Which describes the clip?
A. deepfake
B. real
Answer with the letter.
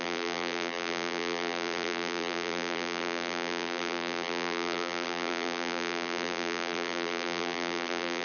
A